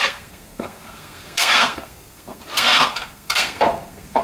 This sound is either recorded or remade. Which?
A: remade